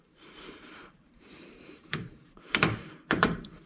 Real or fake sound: fake